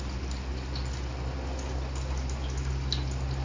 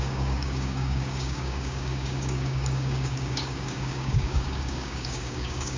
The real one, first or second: first